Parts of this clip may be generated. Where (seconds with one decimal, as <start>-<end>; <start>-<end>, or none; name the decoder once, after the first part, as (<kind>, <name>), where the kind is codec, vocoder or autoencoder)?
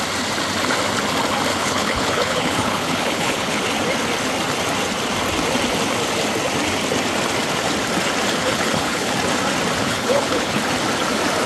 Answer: 1.5-3.6 (codec, HILCodec); 8.4-9.1; 9.8-10.6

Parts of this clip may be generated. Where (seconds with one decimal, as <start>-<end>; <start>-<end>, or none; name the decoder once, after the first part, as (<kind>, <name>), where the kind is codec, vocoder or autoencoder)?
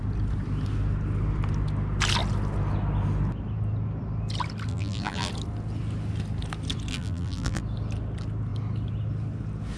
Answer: 4.7-5.3 (vocoder, BigVGAN v2); 6.9-7.6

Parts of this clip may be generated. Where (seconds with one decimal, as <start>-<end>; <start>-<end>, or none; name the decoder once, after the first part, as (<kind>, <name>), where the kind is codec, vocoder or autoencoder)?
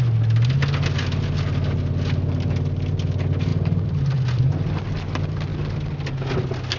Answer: 3.5-4.5 (vocoder, BigVGAN v2)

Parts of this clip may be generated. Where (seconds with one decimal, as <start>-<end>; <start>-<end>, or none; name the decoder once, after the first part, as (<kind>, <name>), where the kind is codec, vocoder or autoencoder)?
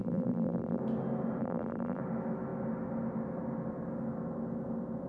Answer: 0.0-0.8 (vocoder, BigVGAN v2); 1.4-2.0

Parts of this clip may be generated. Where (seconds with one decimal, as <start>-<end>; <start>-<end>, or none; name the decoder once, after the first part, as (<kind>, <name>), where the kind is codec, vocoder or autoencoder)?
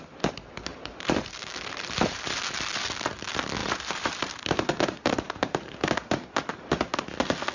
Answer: 0.7-2.4 (vocoder, BigVGAN v2); 3.6-5.9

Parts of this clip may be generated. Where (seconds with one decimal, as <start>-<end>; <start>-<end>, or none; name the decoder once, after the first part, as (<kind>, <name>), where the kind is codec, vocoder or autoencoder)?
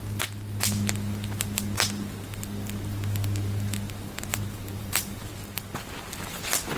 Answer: 4.3-5.3 (vocoder, BigVGAN v2)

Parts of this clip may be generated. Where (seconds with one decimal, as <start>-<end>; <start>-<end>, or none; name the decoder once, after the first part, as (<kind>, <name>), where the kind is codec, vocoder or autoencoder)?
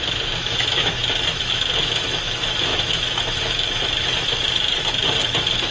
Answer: 0.0-5.7 (autoencoder, DAC-VAE)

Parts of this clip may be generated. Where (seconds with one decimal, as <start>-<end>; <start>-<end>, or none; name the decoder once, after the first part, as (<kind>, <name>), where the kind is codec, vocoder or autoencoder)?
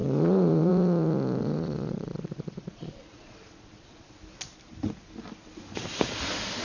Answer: 0.0-0.7 (vocoder, Vocos); 1.4-4.2